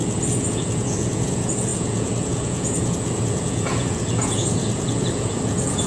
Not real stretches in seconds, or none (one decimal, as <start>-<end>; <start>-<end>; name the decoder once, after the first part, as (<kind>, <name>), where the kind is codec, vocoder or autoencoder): 0.0-5.9 (vocoder, Vocos)